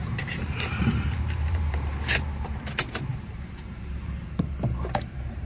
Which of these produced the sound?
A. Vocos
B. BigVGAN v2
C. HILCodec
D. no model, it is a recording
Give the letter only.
B